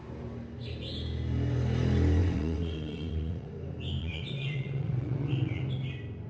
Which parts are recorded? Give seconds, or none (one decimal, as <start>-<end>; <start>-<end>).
0.0-2.2; 3.5-4.0; 5.6-6.3